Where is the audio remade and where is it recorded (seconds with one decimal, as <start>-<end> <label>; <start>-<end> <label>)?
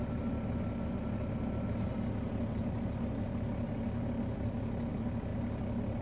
0.0-6.0 recorded